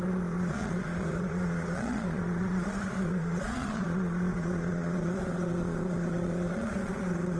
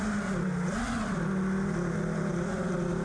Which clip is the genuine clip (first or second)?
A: second